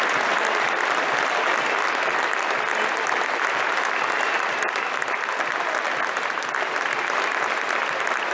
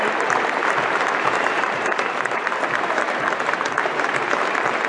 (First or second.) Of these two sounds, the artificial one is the second